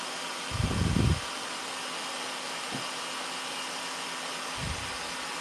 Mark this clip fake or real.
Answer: real